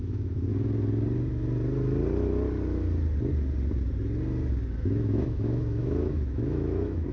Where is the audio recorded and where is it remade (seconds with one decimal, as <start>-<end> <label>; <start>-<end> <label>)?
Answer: 0.0-0.5 remade; 0.5-4.8 recorded; 4.8-7.1 remade

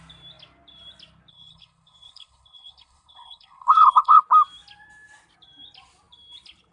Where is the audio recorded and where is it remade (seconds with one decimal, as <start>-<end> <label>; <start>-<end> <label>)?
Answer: 0.0-1.3 recorded; 1.3-4.2 remade; 4.2-6.7 recorded

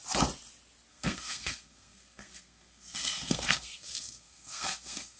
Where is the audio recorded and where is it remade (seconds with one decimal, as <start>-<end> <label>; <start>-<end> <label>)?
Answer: 0.0-0.9 recorded; 0.9-5.2 remade

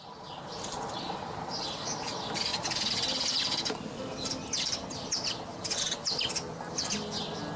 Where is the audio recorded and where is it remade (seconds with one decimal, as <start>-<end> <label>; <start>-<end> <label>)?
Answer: 0.0-7.6 recorded

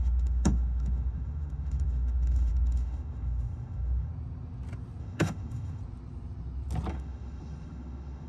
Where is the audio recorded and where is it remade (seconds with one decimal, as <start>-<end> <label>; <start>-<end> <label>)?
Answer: 0.0-4.1 remade; 4.1-5.0 recorded; 5.0-5.8 remade; 5.8-6.9 recorded; 6.9-8.3 remade

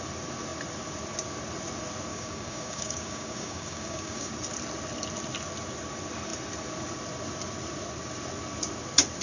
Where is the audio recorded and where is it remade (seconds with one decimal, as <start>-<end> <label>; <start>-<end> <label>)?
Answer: 0.0-2.1 recorded; 2.1-4.3 remade; 4.3-9.2 recorded

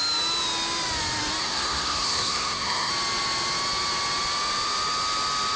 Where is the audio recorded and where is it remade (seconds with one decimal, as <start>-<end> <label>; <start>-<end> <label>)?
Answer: 0.0-1.4 recorded; 1.4-2.9 remade; 2.9-5.6 recorded